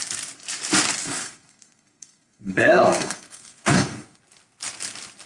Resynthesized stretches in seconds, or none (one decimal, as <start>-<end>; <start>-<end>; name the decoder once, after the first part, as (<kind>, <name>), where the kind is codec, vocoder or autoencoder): 1.0-4.2 (codec, SNAC)